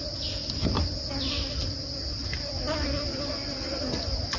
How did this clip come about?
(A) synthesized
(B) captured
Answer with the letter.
B